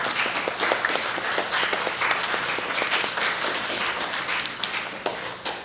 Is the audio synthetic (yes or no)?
no